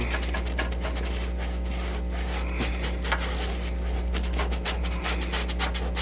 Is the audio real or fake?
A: real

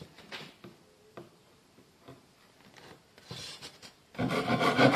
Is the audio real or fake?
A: real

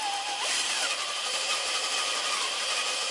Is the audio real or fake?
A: fake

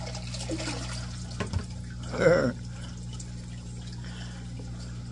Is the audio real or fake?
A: real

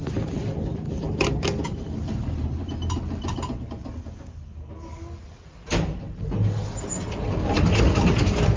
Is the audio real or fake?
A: real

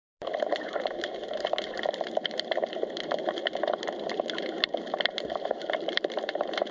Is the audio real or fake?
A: fake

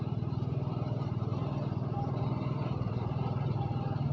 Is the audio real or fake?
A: fake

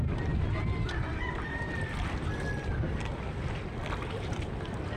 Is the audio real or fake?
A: real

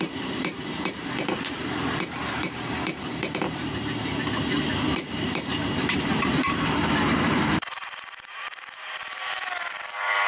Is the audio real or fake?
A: fake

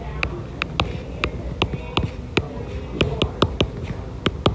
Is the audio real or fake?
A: real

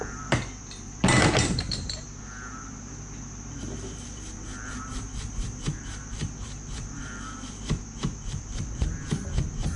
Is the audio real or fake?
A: fake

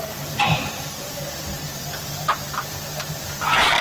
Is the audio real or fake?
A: fake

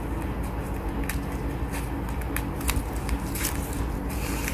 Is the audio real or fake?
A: real